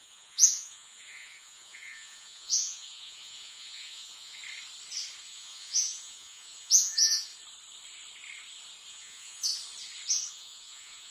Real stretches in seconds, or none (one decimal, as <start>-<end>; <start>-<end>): 4.4-5.2; 7.3-8.9; 9.5-10.3